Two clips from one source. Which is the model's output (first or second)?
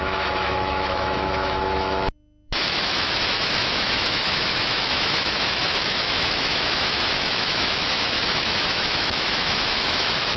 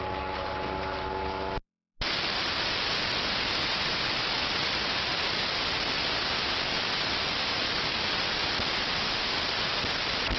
first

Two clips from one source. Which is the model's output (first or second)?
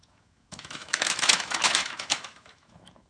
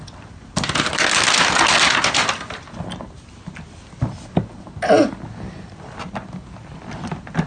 first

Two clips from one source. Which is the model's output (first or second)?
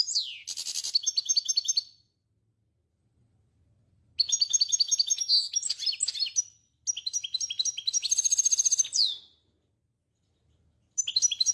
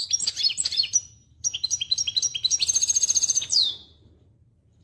second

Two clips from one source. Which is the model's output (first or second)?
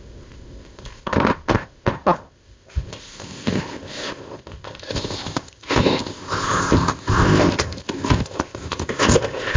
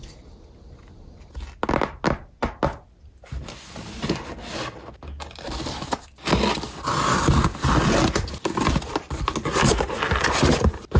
first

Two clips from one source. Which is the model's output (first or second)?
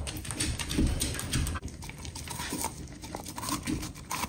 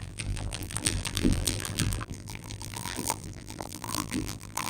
second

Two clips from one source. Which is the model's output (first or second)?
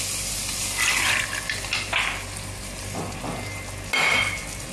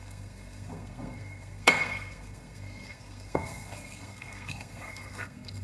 second